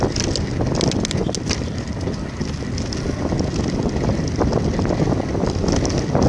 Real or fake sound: real